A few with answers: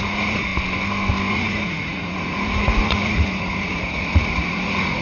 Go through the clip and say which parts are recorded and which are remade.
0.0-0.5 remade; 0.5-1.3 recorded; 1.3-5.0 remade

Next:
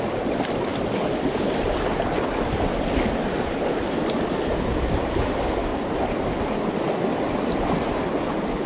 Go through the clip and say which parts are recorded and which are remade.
0.0-8.7 recorded

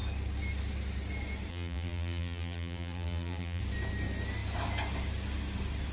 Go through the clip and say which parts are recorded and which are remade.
0.0-1.5 recorded; 1.5-3.6 remade; 3.6-5.9 recorded